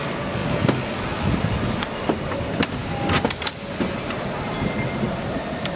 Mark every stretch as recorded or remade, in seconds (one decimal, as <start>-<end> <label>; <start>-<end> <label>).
0.0-5.8 recorded

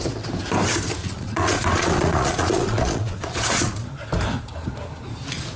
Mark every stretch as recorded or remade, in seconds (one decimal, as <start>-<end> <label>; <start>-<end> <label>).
0.0-1.0 recorded; 1.0-3.7 remade; 3.7-5.6 recorded

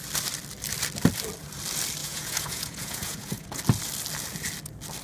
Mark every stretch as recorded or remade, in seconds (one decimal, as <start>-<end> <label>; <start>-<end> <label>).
0.0-2.0 recorded; 2.0-3.6 remade; 3.6-5.0 recorded